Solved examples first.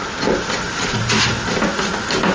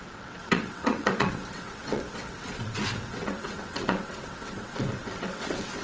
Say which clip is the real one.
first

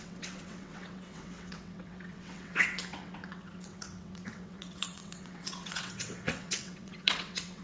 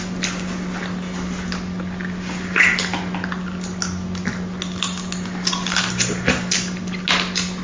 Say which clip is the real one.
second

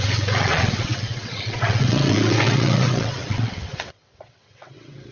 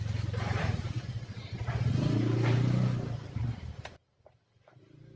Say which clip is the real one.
second